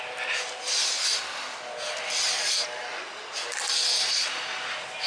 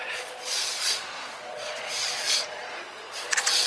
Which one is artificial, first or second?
second